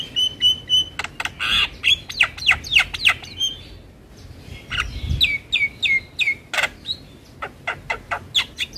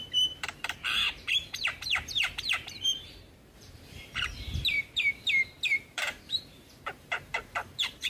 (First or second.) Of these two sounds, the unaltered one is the first